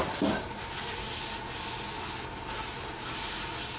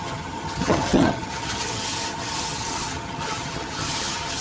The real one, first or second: first